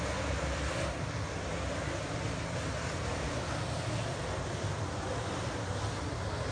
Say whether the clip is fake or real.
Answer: real